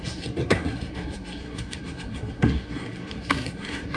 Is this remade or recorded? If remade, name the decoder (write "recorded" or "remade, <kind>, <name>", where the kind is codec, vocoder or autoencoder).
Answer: remade, codec, SNAC